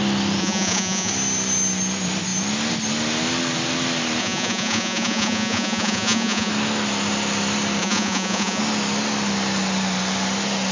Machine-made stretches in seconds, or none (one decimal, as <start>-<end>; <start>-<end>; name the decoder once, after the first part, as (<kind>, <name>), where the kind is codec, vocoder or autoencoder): 0.4-1.1 (vocoder, Vocos); 4.2-6.5; 7.8-8.6